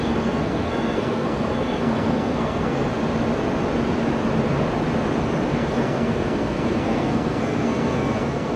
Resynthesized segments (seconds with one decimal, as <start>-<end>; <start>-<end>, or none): 0.0-2.9; 5.5-8.6